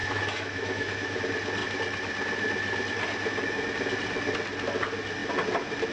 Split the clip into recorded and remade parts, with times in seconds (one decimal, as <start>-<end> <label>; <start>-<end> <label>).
0.0-1.2 remade; 1.2-5.9 recorded